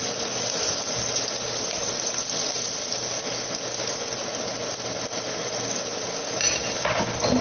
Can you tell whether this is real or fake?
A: real